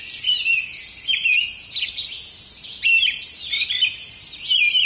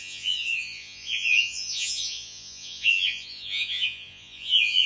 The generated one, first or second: second